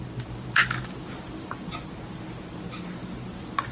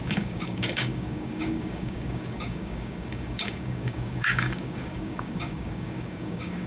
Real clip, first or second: first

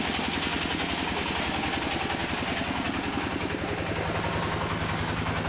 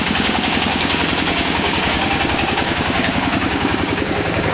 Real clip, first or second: first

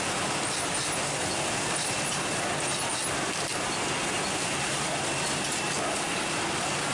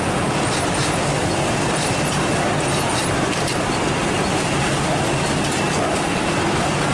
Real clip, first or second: first